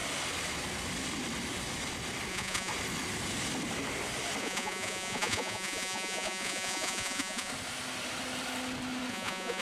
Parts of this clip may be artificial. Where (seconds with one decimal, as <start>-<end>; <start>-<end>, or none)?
2.3-2.7; 4.4-7.5; 9.1-9.6